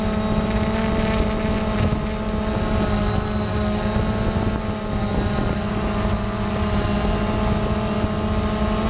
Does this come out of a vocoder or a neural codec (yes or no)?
no